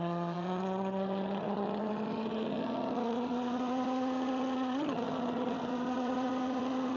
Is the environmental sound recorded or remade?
remade